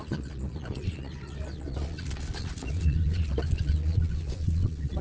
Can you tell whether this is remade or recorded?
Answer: remade